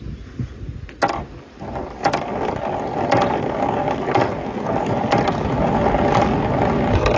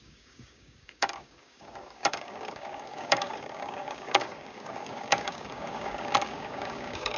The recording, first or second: first